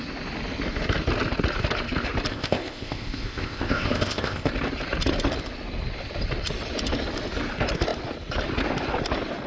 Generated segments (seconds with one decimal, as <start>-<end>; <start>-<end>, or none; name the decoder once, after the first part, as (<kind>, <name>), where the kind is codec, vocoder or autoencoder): 2.3-4.5 (codec, ZipCodec)

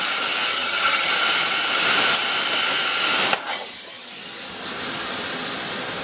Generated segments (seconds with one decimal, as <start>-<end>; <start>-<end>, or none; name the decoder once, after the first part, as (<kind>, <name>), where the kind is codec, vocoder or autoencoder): 0.5-1.1 (vocoder, HiFi-GAN); 3.5-4.1

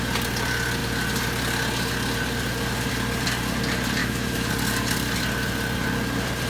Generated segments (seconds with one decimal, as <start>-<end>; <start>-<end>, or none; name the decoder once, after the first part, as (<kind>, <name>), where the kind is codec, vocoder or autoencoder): 4.0-4.5 (autoencoder, DAC-VAE)

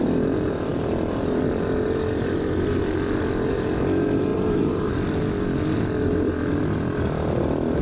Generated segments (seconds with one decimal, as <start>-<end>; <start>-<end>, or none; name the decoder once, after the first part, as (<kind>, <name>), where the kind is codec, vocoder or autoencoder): 4.3-4.9 (vocoder, BigVGAN v2)

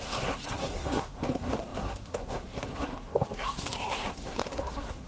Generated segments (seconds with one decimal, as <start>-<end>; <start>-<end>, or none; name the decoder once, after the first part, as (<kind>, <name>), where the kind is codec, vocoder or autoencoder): 0.0-5.1 (codec, SNAC)

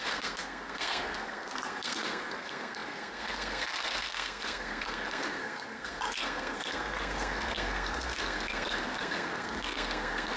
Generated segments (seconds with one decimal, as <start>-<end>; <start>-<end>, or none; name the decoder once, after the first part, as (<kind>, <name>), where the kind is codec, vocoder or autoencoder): 0.0-10.4 (codec, SNAC)

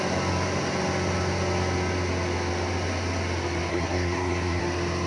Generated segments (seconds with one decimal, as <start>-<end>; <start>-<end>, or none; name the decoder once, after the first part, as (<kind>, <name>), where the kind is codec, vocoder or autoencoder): 3.7-4.6 (codec, SNAC)